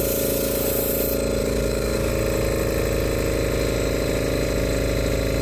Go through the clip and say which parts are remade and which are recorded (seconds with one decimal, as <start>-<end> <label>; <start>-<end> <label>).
0.0-1.4 recorded; 1.4-2.1 remade; 2.1-5.4 recorded